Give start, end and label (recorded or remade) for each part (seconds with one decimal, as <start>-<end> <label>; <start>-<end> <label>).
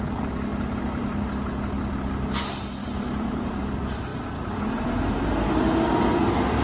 0.0-2.8 recorded; 2.8-3.6 remade; 3.6-6.6 recorded